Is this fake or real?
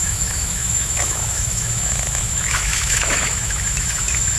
fake